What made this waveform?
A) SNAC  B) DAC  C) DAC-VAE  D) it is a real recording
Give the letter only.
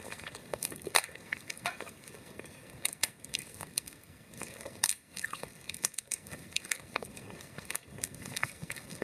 A